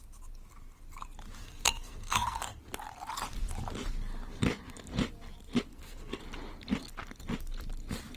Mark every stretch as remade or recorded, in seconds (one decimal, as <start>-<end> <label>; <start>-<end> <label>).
0.0-1.4 recorded; 1.4-2.6 remade; 2.6-5.7 recorded; 5.7-6.2 remade; 6.2-8.2 recorded